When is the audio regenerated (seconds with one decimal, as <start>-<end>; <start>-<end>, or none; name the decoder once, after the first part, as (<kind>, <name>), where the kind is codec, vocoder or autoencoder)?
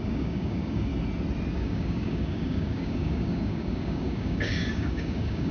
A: 0.0-0.9 (codec, DAC); 1.5-5.5